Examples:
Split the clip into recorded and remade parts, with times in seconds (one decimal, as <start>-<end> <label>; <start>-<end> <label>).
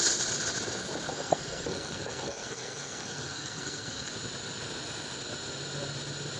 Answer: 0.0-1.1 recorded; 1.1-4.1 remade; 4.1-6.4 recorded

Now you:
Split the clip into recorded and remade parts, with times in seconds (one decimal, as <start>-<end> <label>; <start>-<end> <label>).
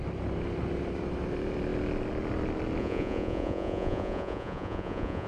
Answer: 0.0-2.8 recorded; 2.8-5.3 remade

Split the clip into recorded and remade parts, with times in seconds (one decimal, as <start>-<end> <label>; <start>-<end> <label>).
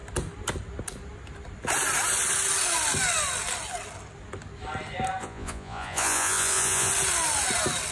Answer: 0.0-5.2 recorded; 5.2-6.9 remade; 6.9-7.9 recorded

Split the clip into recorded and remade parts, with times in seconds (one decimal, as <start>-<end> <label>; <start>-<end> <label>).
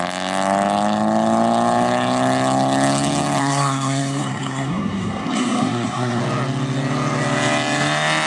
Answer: 0.0-3.4 recorded; 3.4-6.2 remade; 6.2-8.3 recorded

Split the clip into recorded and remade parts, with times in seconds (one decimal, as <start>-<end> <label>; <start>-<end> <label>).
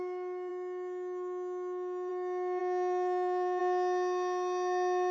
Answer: 0.0-2.6 recorded; 2.6-3.6 remade; 3.6-5.1 recorded